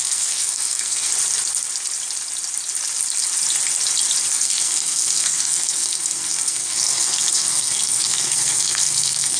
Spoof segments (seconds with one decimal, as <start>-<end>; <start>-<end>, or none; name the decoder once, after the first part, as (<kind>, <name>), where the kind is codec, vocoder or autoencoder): 0.0-1.1 (codec, SNAC); 4.3-9.4